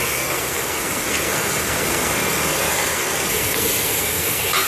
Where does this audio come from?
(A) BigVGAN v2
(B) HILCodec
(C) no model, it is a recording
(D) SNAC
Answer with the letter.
D